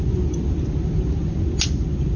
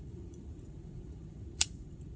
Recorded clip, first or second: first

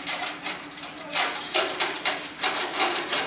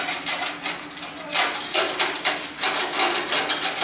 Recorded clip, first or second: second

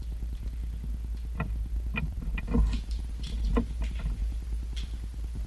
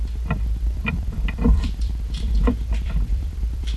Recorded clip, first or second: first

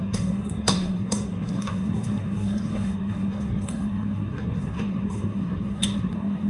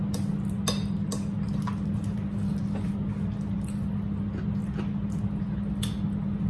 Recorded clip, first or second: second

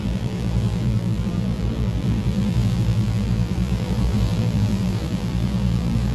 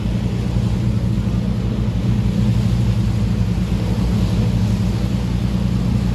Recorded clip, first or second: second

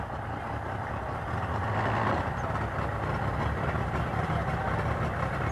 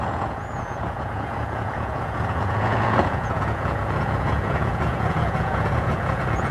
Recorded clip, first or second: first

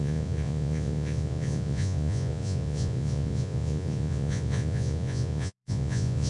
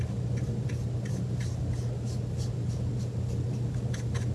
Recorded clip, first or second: second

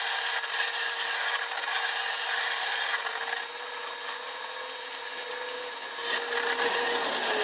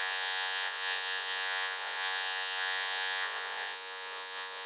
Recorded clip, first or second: first